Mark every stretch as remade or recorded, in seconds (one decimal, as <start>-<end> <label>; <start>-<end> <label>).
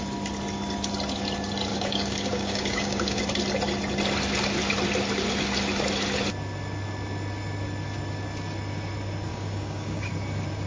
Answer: 0.0-1.7 recorded; 1.7-3.2 remade; 3.2-9.3 recorded; 9.3-10.1 remade; 10.1-10.7 recorded